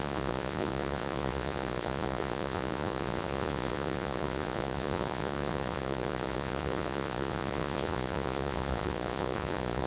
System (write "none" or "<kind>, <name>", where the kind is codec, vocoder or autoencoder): vocoder, Vocos